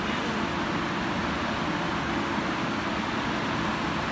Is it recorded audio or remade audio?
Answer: recorded